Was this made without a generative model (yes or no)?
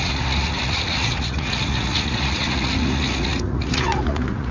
no